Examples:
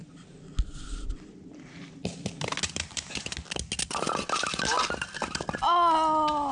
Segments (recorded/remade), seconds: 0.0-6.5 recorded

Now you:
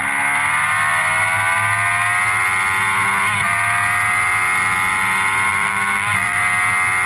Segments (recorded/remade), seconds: 0.0-5.5 recorded; 5.5-6.4 remade; 6.4-7.1 recorded

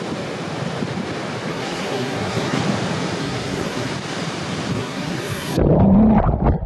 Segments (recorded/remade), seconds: 0.0-1.5 recorded; 1.5-2.6 remade; 2.6-3.2 recorded; 3.2-3.9 remade; 3.9-4.7 recorded; 4.7-5.6 remade; 5.6-6.7 recorded

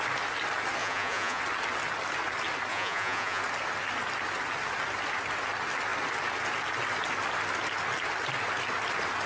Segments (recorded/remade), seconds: 0.0-0.8 recorded; 0.8-1.4 remade; 1.4-2.7 recorded; 2.7-3.4 remade; 3.4-9.3 recorded

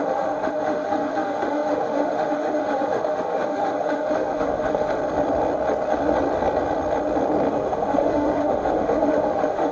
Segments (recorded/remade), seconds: 0.0-5.0 remade; 5.0-7.5 recorded; 7.5-9.7 remade

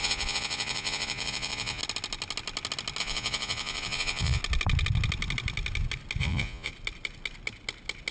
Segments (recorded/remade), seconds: 0.0-1.8 remade; 1.8-3.0 recorded; 3.0-4.4 remade; 4.4-6.2 recorded; 6.2-6.7 remade; 6.7-8.1 recorded

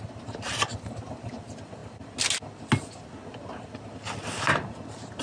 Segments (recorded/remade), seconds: 0.0-5.2 recorded